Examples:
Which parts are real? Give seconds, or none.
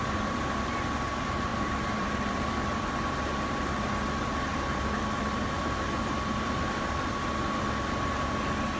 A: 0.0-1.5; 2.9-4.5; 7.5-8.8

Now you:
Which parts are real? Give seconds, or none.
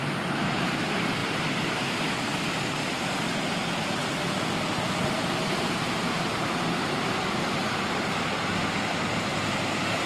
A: 3.6-5.5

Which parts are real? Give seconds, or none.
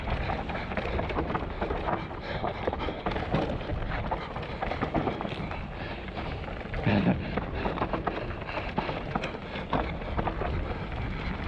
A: 0.0-11.5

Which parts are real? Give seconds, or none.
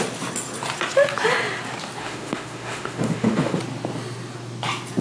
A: 0.0-2.0; 3.6-5.0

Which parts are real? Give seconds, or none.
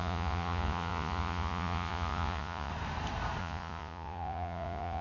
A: 2.7-3.4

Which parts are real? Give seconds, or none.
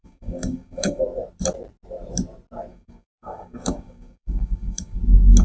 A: 1.0-2.7; 5.0-5.4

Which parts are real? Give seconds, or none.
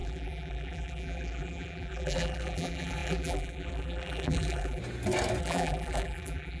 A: 4.8-5.4